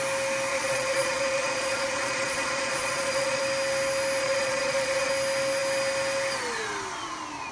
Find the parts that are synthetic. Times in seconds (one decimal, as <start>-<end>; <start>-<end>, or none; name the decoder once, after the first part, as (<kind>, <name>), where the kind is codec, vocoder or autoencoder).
0.5-3.4 (vocoder, Vocos); 4.2-5.1